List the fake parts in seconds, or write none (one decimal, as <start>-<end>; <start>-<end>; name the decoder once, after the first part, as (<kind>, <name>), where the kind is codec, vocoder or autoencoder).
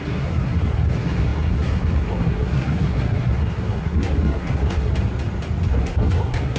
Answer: 0.0-4.9 (codec, SNAC); 5.8-6.6